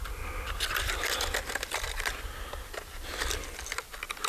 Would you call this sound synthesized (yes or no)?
no